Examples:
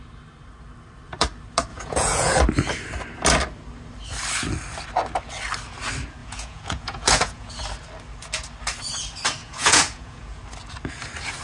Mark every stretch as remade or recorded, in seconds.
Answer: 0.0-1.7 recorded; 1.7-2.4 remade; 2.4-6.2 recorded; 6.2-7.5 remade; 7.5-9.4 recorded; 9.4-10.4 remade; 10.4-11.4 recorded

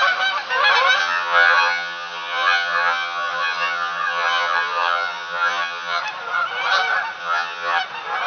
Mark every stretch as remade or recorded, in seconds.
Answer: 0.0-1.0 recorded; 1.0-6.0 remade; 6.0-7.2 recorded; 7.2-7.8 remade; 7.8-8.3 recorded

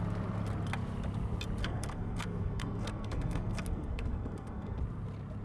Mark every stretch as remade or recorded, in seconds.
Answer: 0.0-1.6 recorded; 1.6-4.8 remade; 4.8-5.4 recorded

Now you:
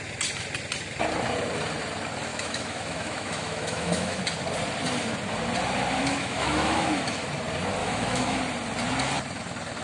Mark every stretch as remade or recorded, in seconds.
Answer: 0.0-2.3 recorded; 2.3-4.2 remade; 4.2-6.0 recorded; 6.0-7.3 remade; 7.3-7.8 recorded; 7.8-8.4 remade; 8.4-9.8 recorded

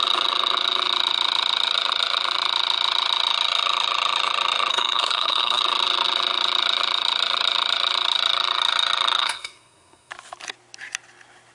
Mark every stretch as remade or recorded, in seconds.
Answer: 0.0-4.7 recorded; 4.7-5.6 remade; 5.6-9.2 recorded; 9.2-10.1 remade; 10.1-11.5 recorded

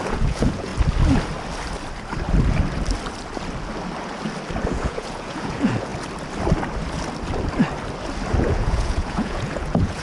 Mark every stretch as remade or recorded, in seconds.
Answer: 0.0-0.7 remade; 0.7-4.7 recorded; 4.7-5.9 remade; 5.9-8.4 recorded; 8.4-10.0 remade

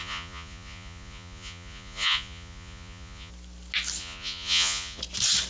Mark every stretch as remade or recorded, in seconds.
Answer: 0.0-3.3 remade; 3.3-4.0 recorded; 4.0-5.0 remade; 5.0-5.5 recorded

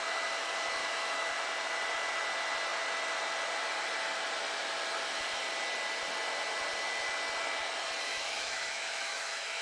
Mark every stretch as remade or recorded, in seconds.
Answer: 0.0-0.8 recorded; 0.8-1.3 remade; 1.3-8.1 recorded; 8.1-9.6 remade